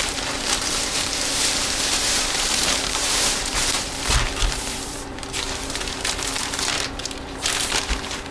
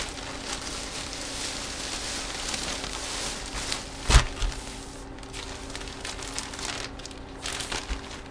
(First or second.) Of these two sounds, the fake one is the first